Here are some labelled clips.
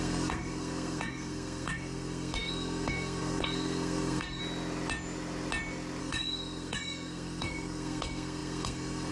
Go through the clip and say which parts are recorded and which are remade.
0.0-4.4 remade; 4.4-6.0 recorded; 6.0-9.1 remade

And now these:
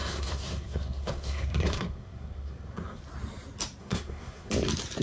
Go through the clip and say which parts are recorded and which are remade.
0.0-3.0 remade; 3.0-3.8 recorded; 3.8-4.5 remade; 4.5-5.0 recorded

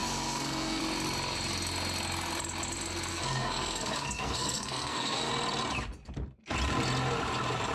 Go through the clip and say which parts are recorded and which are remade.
0.0-0.8 remade; 0.8-3.1 recorded; 3.1-5.3 remade; 5.3-7.7 recorded

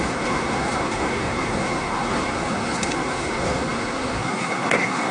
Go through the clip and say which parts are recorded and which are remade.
0.0-5.1 remade

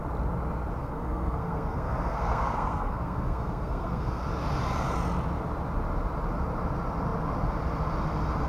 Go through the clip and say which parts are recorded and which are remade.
0.0-0.8 recorded; 0.8-4.2 remade; 4.2-8.5 recorded

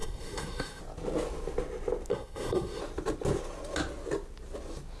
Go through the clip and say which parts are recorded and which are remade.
0.0-0.8 remade; 0.8-2.1 recorded; 2.1-2.8 remade; 2.8-5.0 recorded

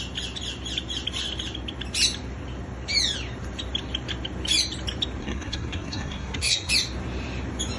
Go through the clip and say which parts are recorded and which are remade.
0.0-5.2 recorded; 5.2-6.7 remade; 6.7-7.8 recorded